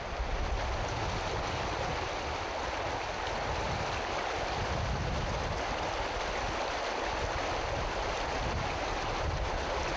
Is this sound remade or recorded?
recorded